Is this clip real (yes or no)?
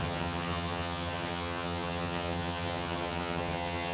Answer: no